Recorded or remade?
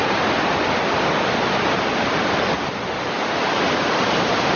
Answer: recorded